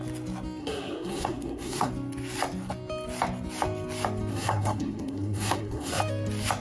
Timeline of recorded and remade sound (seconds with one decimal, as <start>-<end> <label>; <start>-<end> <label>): 0.0-0.6 recorded; 0.6-1.9 remade; 1.9-4.3 recorded; 4.3-6.0 remade; 6.0-6.6 recorded